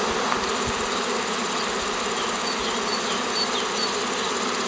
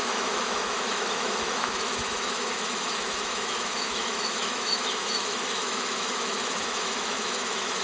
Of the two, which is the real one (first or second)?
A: first